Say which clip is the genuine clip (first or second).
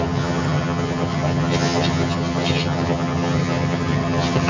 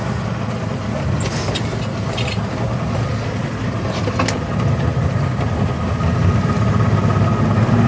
second